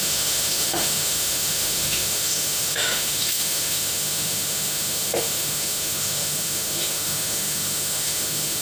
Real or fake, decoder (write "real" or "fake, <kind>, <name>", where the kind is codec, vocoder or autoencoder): fake, autoencoder, DAC-VAE